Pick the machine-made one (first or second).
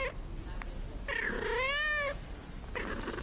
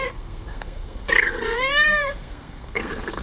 second